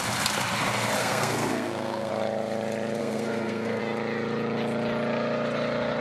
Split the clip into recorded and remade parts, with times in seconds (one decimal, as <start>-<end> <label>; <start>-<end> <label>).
0.0-1.0 recorded; 1.0-2.1 remade; 2.1-3.0 recorded; 3.0-3.8 remade; 3.8-6.0 recorded